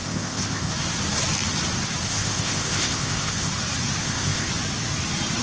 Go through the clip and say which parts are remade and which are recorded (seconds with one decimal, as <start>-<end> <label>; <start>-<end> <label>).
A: 0.0-0.7 remade; 0.7-2.1 recorded; 2.1-3.5 remade; 3.5-4.0 recorded; 4.0-4.5 remade; 4.5-5.4 recorded